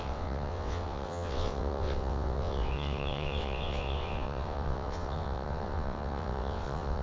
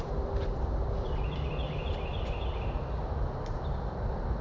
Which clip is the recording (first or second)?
second